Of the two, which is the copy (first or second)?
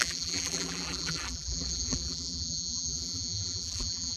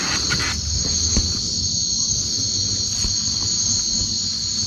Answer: first